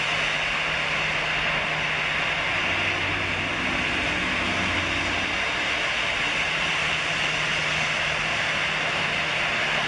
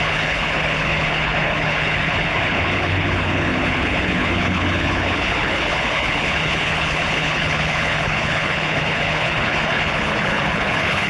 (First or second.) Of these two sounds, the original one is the first